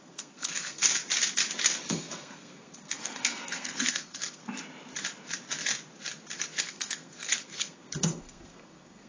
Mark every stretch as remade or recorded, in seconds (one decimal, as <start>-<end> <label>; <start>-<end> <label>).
0.0-0.8 remade; 0.8-1.9 recorded; 1.9-4.4 remade; 4.4-6.6 recorded; 6.6-9.1 remade